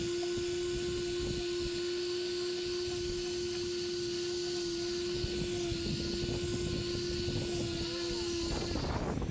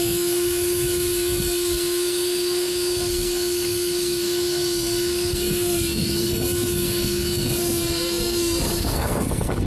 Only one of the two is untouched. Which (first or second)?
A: first